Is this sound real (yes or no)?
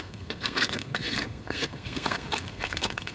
no